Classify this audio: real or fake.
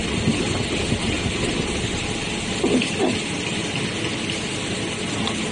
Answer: real